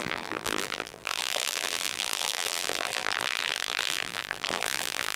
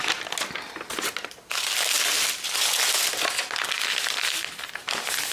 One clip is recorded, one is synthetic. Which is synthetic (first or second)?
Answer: first